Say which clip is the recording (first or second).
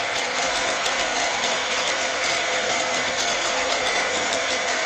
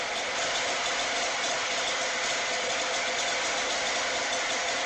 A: second